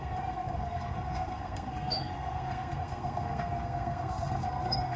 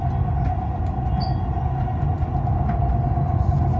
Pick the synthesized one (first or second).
first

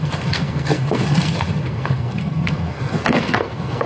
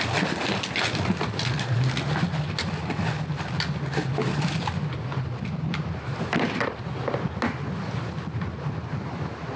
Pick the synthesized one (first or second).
first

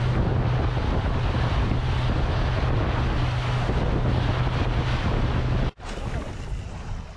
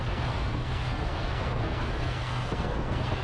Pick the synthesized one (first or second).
second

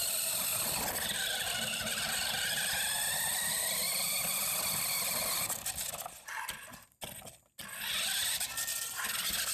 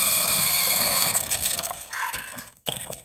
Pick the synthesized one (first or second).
second